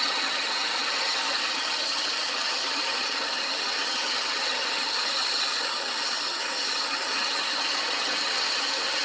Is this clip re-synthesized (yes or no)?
yes